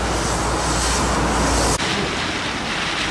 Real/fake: real